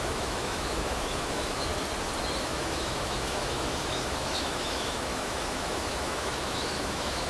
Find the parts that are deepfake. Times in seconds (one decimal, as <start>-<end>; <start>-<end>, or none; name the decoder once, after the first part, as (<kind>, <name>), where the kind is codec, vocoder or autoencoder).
0.0-1.7 (autoencoder, DAC-VAE); 2.4-7.3